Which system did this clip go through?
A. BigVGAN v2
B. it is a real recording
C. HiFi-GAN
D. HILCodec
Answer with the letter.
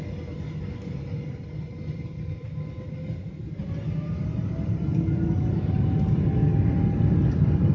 B